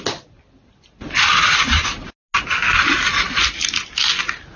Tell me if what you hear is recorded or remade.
recorded